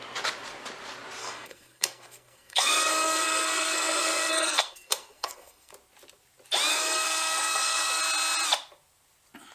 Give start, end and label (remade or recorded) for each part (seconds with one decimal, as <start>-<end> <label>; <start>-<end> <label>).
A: 0.0-1.2 recorded; 1.2-5.7 remade; 5.7-6.7 recorded; 6.7-8.0 remade; 8.0-9.5 recorded